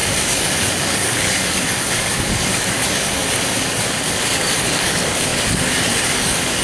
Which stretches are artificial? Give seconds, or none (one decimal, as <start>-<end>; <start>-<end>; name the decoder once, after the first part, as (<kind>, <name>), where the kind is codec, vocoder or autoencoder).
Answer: 0.0-6.6 (codec, DAC)